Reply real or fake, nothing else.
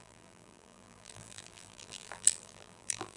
fake